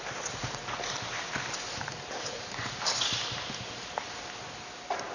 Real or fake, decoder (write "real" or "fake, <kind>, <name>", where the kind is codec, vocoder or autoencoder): real